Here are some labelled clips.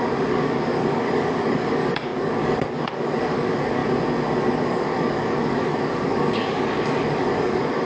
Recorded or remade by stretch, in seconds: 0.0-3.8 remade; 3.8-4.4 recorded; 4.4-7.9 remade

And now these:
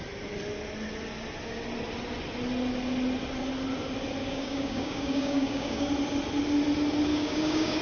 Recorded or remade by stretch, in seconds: 0.0-4.2 recorded; 4.2-5.9 remade; 5.9-7.1 recorded; 7.1-7.8 remade

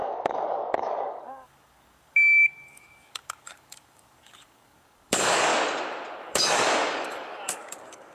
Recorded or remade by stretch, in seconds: 0.0-5.5 remade; 5.5-6.2 recorded; 6.2-8.1 remade

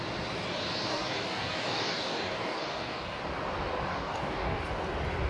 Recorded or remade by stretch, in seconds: 0.0-0.9 recorded; 0.9-3.2 remade; 3.2-3.9 recorded; 3.9-4.6 remade; 4.6-5.3 recorded